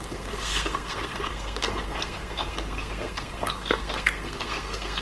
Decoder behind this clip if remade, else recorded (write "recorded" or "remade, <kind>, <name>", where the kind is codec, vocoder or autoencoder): remade, codec, SNAC